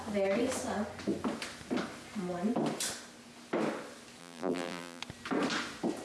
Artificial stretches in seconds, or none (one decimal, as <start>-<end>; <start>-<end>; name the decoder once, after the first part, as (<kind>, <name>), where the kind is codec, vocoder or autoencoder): 4.2-5.0 (vocoder, BigVGAN v2)